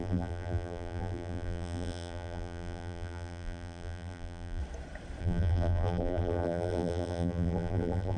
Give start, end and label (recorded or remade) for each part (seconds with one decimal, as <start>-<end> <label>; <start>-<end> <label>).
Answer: 0.0-4.6 remade; 4.6-5.2 recorded; 5.2-8.2 remade

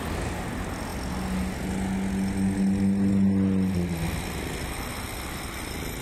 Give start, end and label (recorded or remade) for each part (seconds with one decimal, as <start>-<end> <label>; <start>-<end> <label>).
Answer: 0.0-6.0 recorded

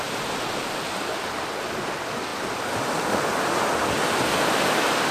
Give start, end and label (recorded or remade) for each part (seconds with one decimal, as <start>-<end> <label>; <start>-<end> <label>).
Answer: 0.0-5.1 recorded

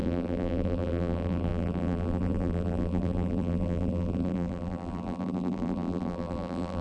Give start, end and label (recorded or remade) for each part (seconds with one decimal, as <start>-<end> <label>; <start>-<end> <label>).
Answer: 0.0-6.8 remade